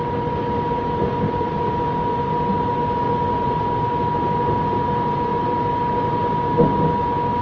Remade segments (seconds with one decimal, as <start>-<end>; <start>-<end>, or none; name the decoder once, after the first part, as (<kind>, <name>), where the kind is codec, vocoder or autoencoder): none